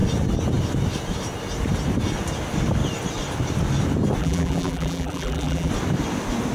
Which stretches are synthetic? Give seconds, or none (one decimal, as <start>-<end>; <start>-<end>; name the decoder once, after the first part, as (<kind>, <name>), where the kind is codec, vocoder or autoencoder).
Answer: 4.2-5.7 (vocoder, BigVGAN v2)